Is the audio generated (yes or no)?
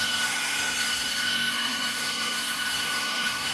yes